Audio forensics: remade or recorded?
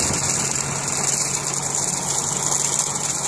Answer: recorded